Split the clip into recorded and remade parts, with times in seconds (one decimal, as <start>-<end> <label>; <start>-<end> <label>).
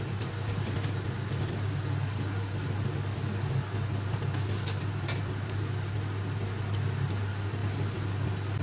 0.0-8.6 recorded